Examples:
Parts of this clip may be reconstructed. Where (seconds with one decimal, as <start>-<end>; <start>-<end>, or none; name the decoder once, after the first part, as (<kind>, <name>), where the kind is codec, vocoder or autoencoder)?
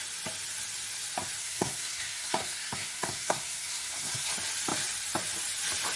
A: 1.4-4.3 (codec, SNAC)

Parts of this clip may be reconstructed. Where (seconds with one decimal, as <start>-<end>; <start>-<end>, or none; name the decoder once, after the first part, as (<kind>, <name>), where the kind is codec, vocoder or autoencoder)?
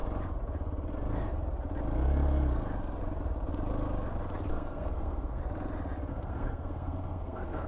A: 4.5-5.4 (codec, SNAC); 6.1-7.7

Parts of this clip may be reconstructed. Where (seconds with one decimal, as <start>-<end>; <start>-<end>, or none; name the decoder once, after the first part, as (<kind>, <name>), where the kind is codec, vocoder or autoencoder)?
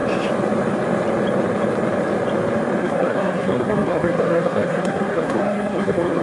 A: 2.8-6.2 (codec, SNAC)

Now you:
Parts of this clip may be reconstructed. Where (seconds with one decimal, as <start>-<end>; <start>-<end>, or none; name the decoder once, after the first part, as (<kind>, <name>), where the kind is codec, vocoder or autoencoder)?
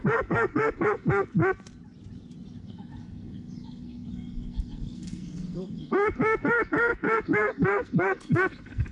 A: 0.0-1.4 (codec, SNAC); 2.6-8.9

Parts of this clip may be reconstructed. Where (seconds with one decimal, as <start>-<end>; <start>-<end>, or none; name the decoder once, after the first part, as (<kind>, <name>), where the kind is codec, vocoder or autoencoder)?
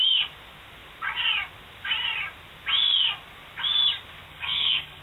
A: 4.3-5.0 (codec, SNAC)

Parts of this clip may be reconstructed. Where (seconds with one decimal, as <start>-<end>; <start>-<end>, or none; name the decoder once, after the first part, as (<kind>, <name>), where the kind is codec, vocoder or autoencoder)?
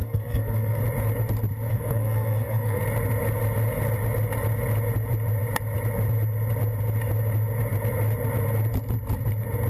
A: 0.0-0.8 (codec, SNAC); 1.7-2.8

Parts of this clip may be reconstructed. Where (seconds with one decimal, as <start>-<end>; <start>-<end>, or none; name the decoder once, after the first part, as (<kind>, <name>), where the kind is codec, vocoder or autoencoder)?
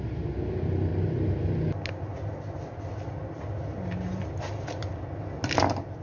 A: none